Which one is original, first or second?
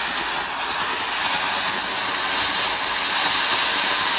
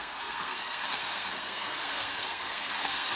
first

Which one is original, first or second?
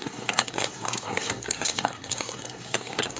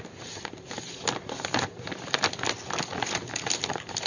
second